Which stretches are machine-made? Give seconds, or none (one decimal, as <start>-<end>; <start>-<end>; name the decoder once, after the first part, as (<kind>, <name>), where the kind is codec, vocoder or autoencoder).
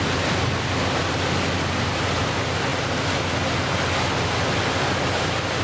none